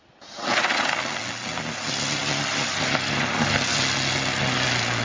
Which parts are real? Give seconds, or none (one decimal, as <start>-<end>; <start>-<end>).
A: 0.0-5.0

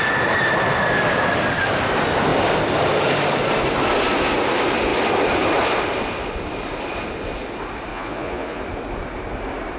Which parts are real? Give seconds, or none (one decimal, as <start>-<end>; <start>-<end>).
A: 0.0-7.9; 8.6-9.8

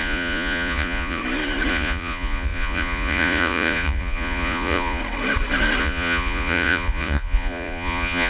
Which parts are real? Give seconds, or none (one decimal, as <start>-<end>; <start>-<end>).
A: 1.2-1.7; 5.0-5.8

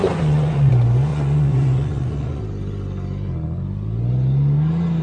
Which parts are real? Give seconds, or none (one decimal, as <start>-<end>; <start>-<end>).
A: 0.7-1.1; 2.4-5.0

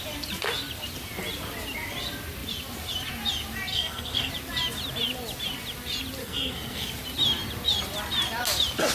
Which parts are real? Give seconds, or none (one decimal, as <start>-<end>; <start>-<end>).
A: 0.0-3.7; 4.3-6.2; 6.9-8.9

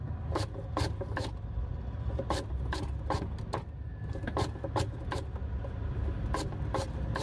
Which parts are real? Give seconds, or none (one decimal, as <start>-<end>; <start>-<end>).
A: 0.0-7.2